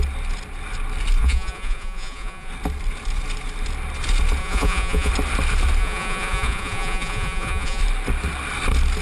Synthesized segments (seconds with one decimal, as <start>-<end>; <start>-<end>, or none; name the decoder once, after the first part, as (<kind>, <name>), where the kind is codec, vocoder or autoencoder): 1.2-2.5 (vocoder, Vocos); 4.4-5.1; 5.8-7.8